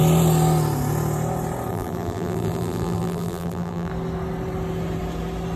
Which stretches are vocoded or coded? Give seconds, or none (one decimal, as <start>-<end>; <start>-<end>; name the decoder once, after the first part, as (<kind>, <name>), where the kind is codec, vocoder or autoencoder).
1.7-3.9 (vocoder, BigVGAN v2)